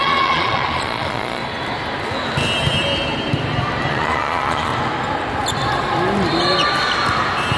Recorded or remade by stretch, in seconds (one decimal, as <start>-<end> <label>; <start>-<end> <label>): 0.0-1.4 remade; 1.4-3.9 recorded; 3.9-4.7 remade; 4.7-7.6 recorded